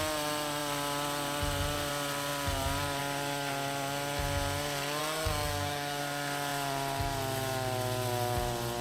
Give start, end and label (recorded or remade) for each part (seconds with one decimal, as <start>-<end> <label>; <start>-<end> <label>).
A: 0.0-5.0 recorded; 5.0-6.0 remade; 6.0-8.8 recorded